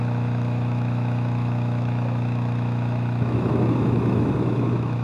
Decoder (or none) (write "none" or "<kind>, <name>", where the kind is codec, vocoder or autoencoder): autoencoder, DAC-VAE